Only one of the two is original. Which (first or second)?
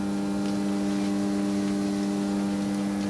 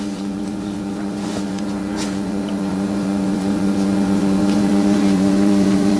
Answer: first